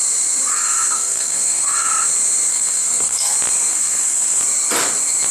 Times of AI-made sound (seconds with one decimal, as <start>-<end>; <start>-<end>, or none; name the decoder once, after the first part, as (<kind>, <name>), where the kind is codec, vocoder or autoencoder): 0.5-1.9 (codec, SNAC); 2.5-3.3; 3.7-4.4